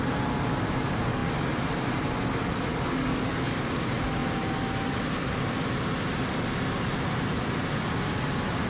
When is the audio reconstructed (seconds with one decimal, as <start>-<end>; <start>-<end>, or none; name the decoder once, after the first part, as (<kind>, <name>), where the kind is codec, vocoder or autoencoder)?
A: 2.7-3.7 (codec, DAC)